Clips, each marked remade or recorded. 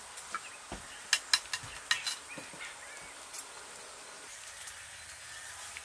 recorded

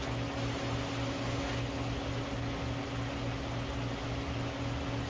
recorded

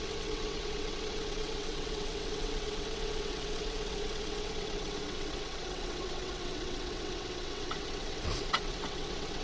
remade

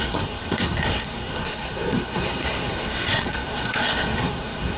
remade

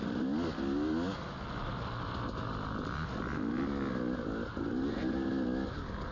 recorded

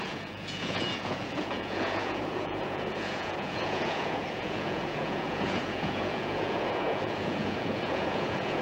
remade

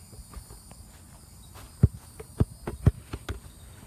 recorded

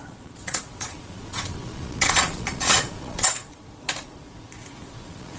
remade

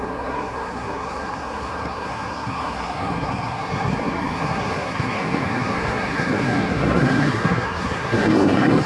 remade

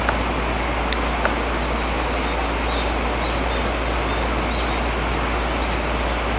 recorded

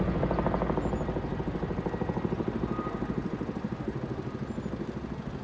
recorded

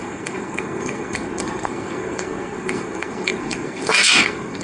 remade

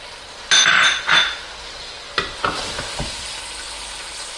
recorded